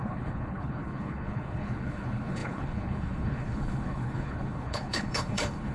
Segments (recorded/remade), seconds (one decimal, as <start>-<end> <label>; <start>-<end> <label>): 0.0-5.7 remade